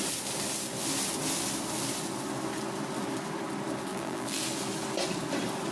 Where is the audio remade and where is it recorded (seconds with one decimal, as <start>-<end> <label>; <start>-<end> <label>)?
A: 0.0-3.9 recorded; 3.9-4.4 remade; 4.4-5.7 recorded